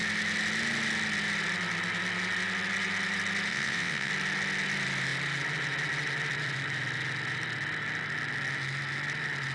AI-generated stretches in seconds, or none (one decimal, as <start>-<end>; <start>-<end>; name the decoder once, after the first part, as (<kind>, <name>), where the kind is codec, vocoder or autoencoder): 3.5-4.1 (vocoder, WaveNeXt)